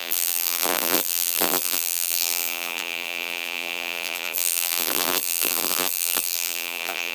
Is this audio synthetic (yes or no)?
yes